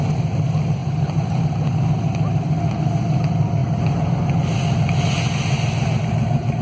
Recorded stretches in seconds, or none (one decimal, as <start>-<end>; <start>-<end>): 0.0-6.6